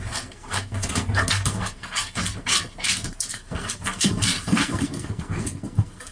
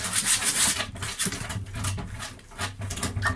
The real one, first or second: second